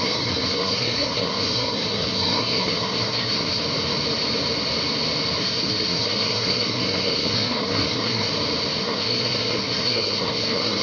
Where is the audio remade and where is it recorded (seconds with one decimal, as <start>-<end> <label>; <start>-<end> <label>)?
0.0-3.6 remade; 3.6-5.4 recorded; 5.4-8.3 remade; 8.3-8.8 recorded; 8.8-10.8 remade